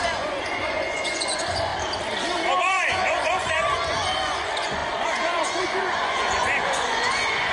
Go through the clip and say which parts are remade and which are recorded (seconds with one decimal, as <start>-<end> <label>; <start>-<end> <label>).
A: 0.0-1.7 remade; 1.7-2.6 recorded; 2.6-7.5 remade